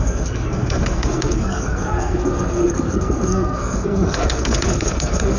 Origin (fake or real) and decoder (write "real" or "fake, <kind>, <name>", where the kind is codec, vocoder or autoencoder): fake, codec, SNAC